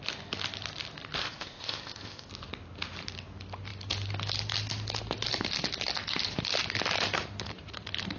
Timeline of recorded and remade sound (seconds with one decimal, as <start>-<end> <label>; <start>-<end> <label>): 0.0-1.2 recorded; 1.2-2.3 remade; 2.3-8.2 recorded